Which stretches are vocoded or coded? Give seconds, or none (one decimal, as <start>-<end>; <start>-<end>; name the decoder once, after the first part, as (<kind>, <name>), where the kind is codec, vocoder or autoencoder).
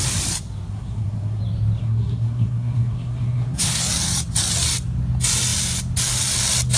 0.7-1.4 (codec, SNAC); 1.8-3.8